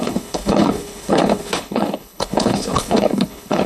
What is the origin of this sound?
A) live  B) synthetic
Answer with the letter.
B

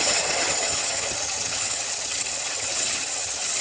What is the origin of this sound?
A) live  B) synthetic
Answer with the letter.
B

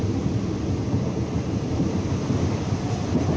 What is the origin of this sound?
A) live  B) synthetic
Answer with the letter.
A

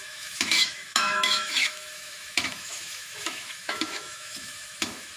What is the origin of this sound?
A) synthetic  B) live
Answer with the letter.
A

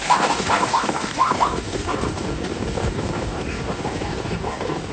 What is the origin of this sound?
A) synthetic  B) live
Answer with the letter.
A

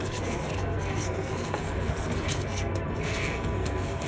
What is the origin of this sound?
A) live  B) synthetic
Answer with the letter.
B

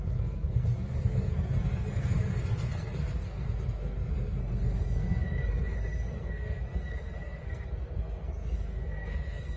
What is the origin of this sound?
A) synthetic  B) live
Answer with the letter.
A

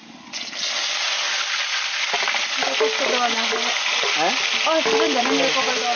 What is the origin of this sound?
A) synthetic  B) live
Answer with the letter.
B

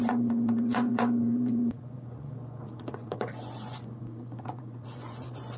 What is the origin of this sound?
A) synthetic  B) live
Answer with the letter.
A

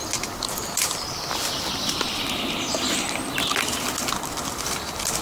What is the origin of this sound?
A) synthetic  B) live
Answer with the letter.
B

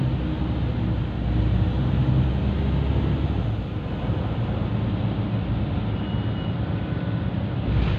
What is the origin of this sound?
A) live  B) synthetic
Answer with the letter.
A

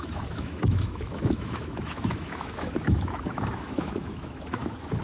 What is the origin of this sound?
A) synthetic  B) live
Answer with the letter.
A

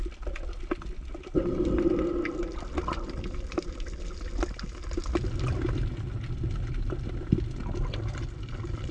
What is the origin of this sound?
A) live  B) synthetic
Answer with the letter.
A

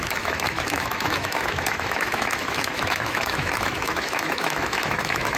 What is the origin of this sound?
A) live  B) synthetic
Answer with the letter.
B